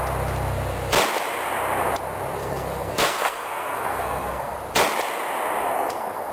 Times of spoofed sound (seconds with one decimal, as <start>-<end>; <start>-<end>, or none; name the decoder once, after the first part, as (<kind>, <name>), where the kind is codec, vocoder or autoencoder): 2.4-4.6 (codec, SNAC); 5.6-6.3